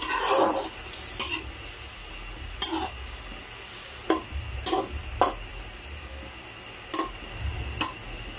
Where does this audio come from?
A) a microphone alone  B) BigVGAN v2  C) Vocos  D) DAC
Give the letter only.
A